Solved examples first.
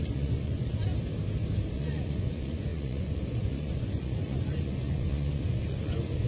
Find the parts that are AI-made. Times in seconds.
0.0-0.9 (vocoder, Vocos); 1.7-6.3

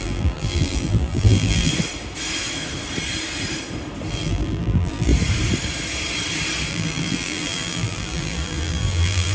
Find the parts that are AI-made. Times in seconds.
0.0-1.7 (vocoder, BigVGAN v2); 4.1-5.1; 6.7-9.3

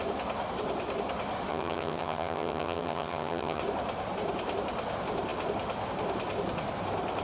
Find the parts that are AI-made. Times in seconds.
1.5-3.6 (vocoder, HiFi-GAN)

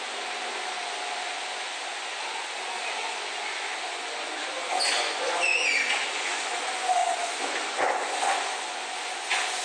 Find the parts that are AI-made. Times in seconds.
0.0-9.6 (vocoder, Vocos)

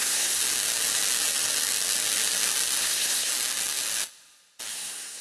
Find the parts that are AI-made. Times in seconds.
0.0-0.4 (codec, SNAC); 2.8-3.3; 4.7-5.2

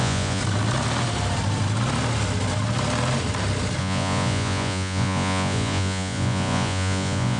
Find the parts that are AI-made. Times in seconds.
0.0-0.4 (vocoder, Vocos); 3.8-7.4

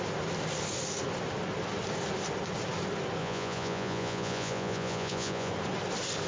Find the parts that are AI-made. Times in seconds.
3.2-5.5 (vocoder, Vocos)